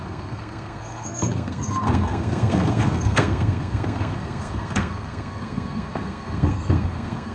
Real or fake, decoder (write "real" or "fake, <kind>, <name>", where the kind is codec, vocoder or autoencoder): fake, codec, SNAC